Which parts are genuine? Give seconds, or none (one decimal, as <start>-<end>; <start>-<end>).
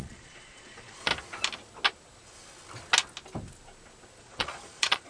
1.1-4.2